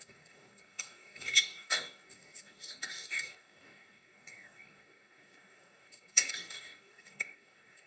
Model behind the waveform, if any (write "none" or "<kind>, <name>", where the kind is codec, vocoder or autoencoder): codec, DAC